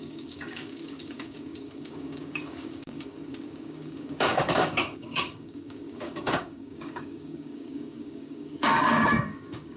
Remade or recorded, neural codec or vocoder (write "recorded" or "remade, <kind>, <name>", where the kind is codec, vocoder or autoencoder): remade, codec, DAC